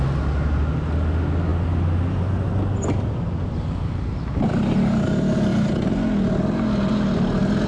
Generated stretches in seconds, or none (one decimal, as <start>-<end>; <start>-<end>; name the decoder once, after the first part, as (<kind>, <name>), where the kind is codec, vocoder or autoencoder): none